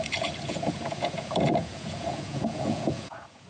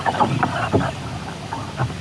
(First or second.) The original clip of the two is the second